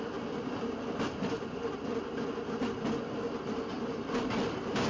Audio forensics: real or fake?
fake